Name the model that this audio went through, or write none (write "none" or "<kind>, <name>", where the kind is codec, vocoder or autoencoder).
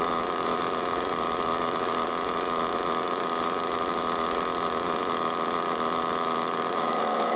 autoencoder, DAC-VAE